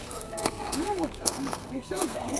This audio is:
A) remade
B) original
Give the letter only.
A